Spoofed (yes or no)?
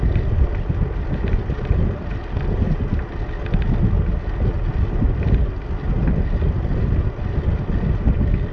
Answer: no